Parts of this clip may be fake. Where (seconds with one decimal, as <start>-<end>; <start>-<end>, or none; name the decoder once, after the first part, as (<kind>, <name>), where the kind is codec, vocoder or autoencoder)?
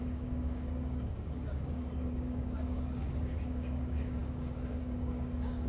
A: 0.0-5.7 (codec, DAC)